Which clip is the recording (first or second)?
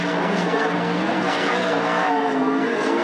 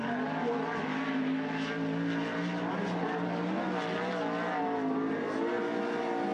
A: second